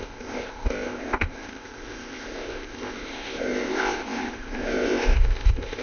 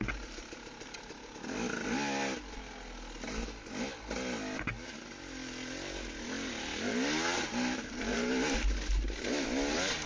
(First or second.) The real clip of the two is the second